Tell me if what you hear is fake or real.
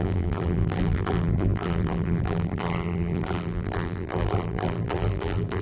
fake